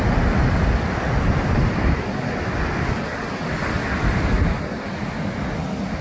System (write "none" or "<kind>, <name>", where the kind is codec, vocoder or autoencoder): none